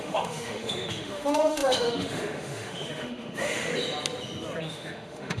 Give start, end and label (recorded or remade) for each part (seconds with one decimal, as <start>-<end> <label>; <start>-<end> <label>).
0.0-3.7 remade; 3.7-4.6 recorded; 4.6-5.4 remade